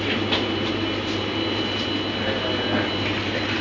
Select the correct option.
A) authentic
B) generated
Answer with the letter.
A